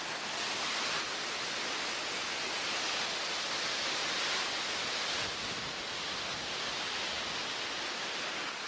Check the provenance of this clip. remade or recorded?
recorded